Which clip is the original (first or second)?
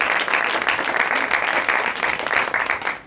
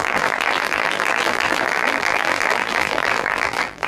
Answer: first